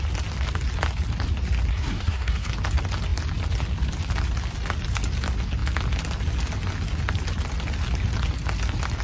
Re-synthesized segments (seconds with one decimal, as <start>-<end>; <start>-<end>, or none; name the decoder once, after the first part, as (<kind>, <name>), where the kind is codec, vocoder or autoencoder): 1.7-2.5 (codec, SNAC)